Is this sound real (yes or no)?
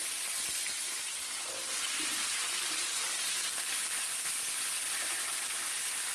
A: yes